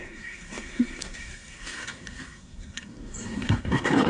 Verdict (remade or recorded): remade